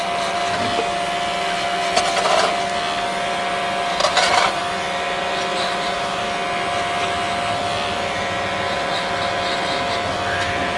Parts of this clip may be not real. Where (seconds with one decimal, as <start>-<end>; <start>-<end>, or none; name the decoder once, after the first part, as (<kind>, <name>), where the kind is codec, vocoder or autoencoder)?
4.0-4.6 (vocoder, BigVGAN v2); 5.5-6.2